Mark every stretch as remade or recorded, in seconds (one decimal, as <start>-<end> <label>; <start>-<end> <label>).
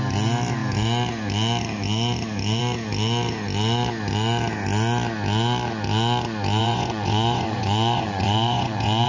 0.0-6.6 recorded; 6.6-9.1 remade